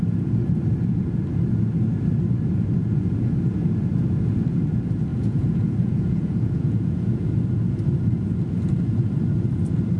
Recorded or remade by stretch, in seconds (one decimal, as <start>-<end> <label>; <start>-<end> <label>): 0.0-2.8 recorded; 2.8-3.3 remade; 3.3-5.1 recorded; 5.1-7.3 remade; 7.3-10.0 recorded

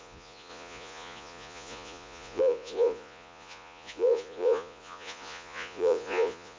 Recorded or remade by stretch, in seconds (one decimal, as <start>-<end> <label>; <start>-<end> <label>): 0.0-6.6 remade

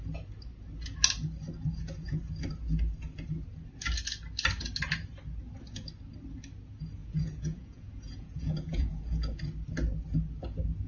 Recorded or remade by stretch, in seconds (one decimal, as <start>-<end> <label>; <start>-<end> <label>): 0.0-7.0 recorded; 7.0-9.4 remade; 9.4-10.9 recorded

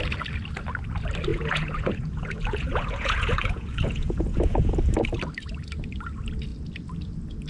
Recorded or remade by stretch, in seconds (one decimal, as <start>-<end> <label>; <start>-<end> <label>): 0.0-1.3 recorded; 1.3-4.7 remade; 4.7-7.5 recorded

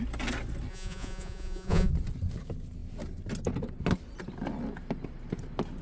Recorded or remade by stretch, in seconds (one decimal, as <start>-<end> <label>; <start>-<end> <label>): 0.0-0.7 recorded; 0.7-1.9 remade; 1.9-5.8 recorded

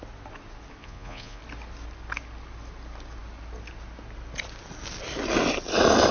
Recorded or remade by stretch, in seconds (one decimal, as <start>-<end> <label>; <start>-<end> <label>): 0.0-0.8 recorded; 0.8-1.4 remade; 1.4-6.1 recorded

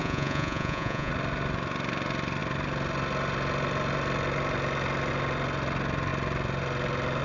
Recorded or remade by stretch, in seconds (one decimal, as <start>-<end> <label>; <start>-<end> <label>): 0.0-1.1 remade; 1.1-7.2 recorded